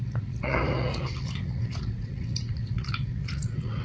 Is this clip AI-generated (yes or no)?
yes